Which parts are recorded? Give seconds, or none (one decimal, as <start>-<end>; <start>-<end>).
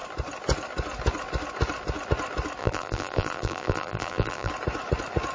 0.0-2.6; 4.5-5.3